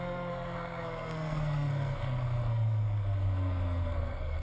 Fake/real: fake